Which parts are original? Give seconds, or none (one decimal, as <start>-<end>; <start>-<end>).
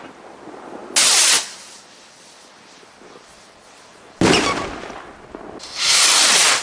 0.0-6.6